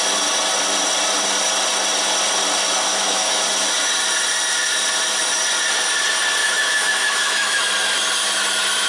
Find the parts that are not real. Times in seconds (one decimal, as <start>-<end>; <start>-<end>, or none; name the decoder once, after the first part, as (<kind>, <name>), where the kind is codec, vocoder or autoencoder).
2.9-3.4 (autoencoder, DAC-VAE); 6.4-7.6